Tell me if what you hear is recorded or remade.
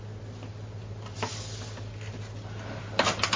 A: recorded